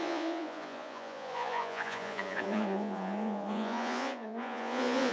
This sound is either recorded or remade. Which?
remade